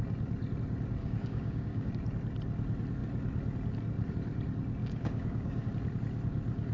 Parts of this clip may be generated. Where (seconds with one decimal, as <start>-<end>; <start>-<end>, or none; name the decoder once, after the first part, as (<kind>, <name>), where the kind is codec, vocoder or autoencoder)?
1.0-1.9 (codec, DAC); 4.8-5.7